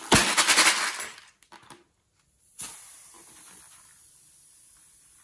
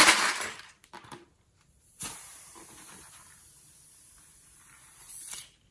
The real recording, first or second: first